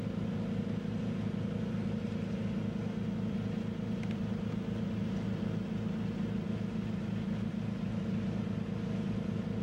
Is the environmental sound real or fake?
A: real